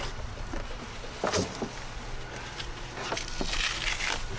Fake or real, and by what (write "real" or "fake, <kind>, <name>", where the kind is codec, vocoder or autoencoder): real